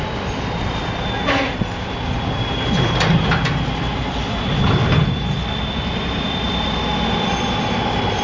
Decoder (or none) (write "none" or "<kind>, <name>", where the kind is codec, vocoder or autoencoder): none